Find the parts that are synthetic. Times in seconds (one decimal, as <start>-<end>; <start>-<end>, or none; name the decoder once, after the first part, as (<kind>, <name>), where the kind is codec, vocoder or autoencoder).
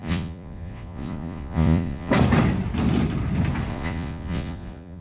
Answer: 0.0-2.1 (vocoder, Vocos); 3.7-5.0